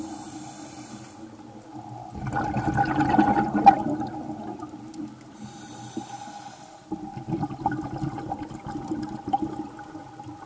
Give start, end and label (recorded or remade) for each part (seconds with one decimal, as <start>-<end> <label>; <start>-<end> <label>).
0.0-10.5 recorded